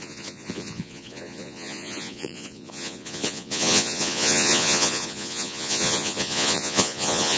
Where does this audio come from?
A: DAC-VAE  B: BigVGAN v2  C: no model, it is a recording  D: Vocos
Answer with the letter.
D